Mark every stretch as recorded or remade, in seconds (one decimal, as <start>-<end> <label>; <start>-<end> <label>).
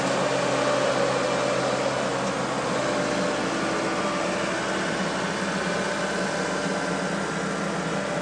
0.0-8.2 recorded